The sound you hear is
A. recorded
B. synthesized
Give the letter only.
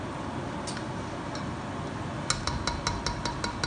A